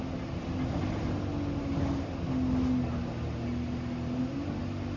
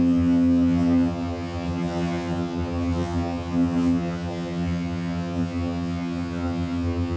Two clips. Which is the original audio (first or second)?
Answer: first